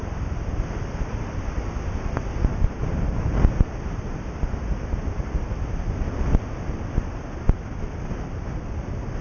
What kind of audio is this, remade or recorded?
recorded